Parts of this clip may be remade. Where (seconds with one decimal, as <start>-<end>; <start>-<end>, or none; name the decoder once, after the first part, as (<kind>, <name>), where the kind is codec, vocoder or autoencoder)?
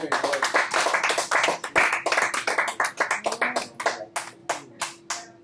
none